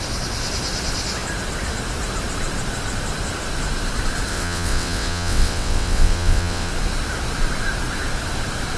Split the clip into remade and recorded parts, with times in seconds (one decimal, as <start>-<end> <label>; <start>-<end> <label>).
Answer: 0.0-4.3 recorded; 4.3-6.7 remade; 6.7-8.8 recorded